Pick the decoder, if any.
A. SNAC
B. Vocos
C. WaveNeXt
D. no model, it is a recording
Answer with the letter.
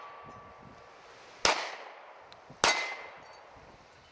D